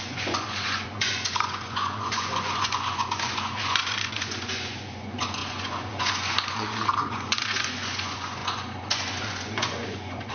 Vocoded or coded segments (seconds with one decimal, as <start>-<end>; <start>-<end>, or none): 0.0-10.3